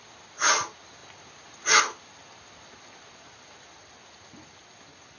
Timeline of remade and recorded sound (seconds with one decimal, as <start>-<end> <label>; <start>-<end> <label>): 0.0-5.2 recorded